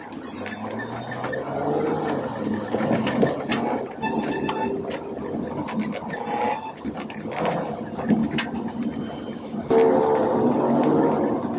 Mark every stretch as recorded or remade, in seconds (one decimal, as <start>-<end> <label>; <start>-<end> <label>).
0.0-11.6 recorded